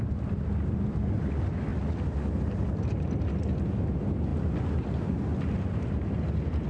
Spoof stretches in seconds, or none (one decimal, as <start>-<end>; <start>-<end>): none